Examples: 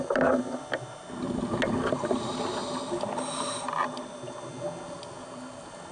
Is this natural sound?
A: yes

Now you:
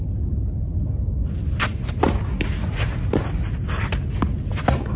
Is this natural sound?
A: yes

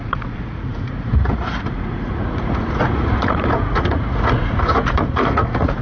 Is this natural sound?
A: no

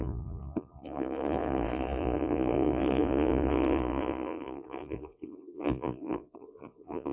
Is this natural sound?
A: no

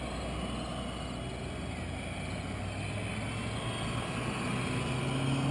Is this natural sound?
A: yes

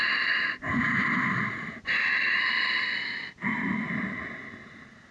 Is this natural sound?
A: yes